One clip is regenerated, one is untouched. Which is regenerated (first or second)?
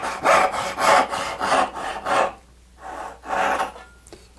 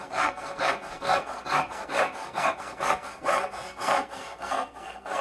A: second